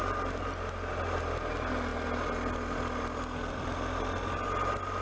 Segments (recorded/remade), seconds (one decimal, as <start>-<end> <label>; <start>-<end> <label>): 0.0-5.0 recorded